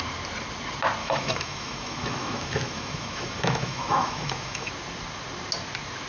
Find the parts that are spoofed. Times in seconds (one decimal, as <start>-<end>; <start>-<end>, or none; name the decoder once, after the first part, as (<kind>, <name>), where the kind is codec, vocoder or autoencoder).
1.0-4.7 (autoencoder, DAC-VAE)

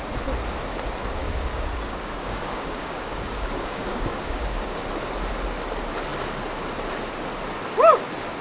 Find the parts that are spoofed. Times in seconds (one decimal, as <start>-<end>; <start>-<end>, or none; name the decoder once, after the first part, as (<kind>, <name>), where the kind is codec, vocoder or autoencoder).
1.2-4.8 (codec, DAC)